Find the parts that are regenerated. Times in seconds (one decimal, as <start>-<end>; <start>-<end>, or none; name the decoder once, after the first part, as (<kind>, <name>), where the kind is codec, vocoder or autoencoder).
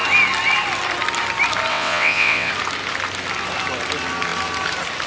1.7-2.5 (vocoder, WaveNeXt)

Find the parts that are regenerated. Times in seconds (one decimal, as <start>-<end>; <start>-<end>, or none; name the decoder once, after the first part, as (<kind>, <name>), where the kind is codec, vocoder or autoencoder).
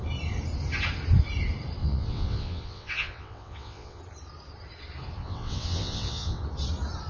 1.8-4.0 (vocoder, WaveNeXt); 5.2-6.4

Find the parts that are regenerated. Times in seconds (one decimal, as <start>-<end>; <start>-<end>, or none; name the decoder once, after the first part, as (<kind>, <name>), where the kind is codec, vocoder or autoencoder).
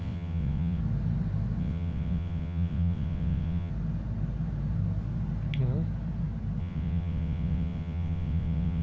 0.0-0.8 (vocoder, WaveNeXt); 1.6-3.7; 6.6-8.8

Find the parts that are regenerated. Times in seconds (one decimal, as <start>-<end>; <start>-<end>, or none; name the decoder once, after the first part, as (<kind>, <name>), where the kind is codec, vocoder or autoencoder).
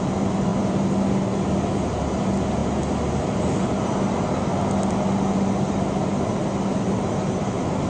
none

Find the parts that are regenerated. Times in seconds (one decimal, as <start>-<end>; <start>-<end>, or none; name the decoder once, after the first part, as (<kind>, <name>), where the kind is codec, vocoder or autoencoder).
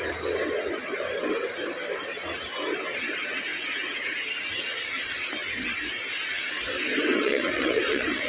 7.1-8.3 (vocoder, WaveNeXt)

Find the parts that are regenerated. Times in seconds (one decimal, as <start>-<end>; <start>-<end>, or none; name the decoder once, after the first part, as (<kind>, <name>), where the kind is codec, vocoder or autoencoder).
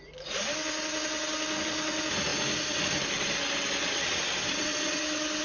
3.8-5.0 (vocoder, WaveNeXt)